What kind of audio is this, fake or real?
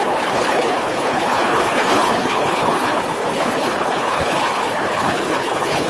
fake